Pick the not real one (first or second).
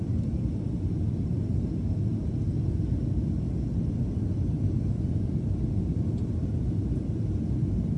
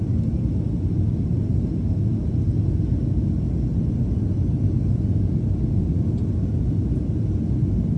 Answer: first